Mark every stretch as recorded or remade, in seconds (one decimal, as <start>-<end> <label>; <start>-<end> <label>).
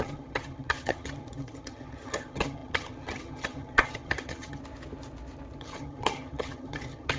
0.0-4.6 remade; 4.6-5.6 recorded; 5.6-7.2 remade